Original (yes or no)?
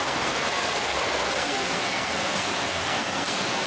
no